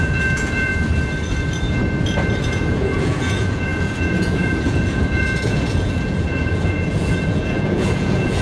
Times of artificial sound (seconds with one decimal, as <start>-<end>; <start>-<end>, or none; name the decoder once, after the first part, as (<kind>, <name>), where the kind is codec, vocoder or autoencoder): 0.0-0.7 (vocoder, Vocos); 2.4-8.4